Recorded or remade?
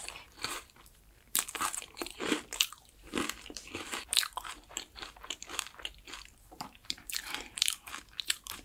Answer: remade